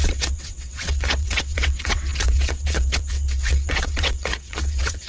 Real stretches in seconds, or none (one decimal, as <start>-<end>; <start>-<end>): none